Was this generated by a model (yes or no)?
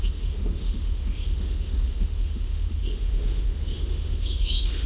yes